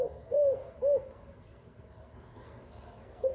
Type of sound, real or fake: fake